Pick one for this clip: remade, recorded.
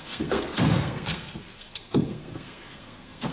remade